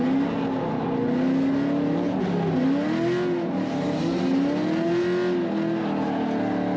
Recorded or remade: recorded